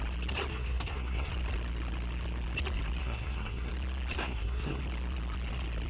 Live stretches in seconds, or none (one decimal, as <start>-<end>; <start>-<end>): 0.0-0.5; 1.3-3.0; 3.7-4.2; 4.8-5.9